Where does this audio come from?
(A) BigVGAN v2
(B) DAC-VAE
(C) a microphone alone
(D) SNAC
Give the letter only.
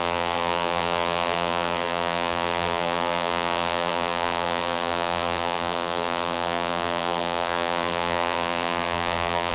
A